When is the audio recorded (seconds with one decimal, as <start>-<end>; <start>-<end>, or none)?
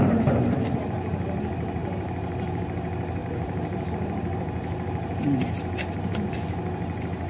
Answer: none